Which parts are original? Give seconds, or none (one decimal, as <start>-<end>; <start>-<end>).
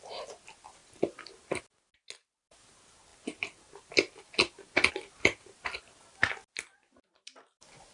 0.0-7.9